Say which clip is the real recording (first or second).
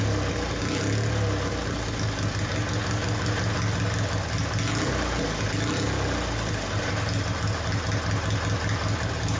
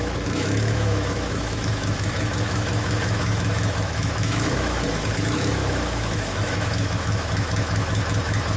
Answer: first